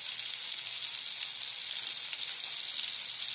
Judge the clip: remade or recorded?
recorded